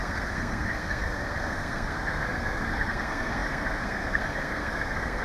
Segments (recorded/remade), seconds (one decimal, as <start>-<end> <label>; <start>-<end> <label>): 0.0-5.2 remade